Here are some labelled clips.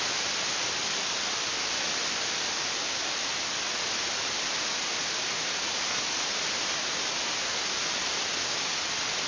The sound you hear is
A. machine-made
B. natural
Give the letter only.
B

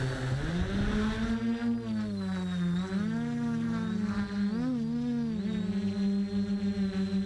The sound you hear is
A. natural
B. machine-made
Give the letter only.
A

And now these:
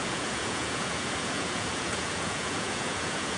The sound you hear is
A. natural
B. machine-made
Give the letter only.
B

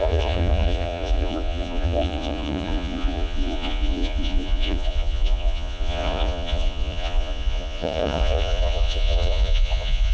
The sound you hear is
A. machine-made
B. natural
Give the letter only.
A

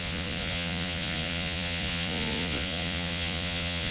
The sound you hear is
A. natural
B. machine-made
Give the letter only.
B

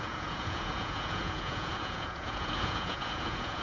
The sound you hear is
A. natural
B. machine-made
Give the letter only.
B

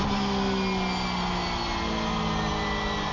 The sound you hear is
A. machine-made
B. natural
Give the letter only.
B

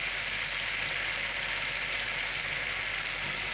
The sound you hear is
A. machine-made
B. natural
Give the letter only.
B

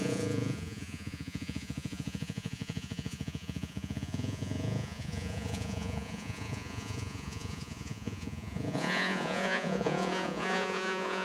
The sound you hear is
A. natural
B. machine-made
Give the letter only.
B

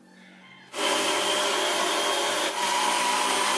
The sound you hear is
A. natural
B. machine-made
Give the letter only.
A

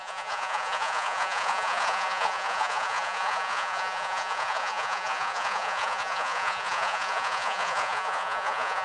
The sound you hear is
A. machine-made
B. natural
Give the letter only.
A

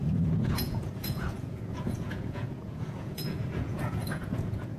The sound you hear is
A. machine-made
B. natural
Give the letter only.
A